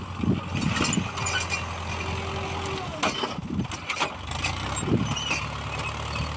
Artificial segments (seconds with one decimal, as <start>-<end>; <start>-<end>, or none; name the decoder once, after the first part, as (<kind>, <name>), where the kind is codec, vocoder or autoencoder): none